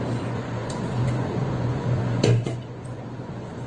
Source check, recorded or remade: remade